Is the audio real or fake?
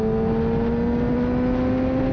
real